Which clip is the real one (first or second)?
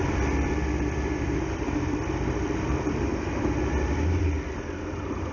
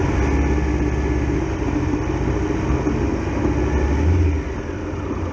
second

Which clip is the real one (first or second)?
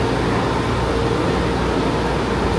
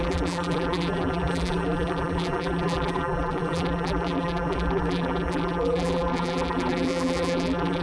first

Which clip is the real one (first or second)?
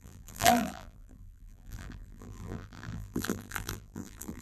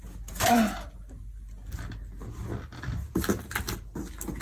second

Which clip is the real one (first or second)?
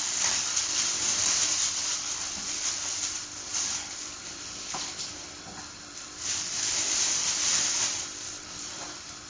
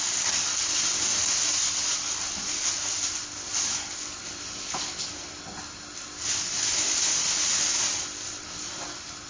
second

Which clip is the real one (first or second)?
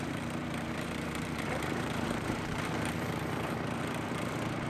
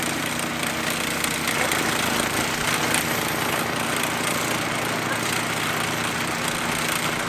second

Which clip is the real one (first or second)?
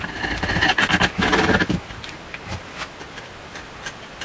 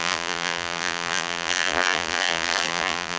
first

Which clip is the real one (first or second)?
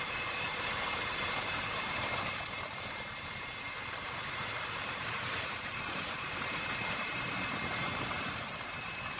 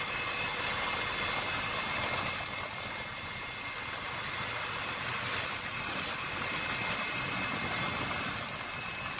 second